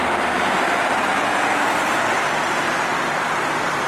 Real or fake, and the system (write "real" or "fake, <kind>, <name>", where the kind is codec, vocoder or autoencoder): real